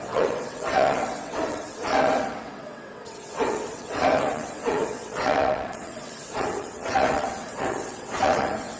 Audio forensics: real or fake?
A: fake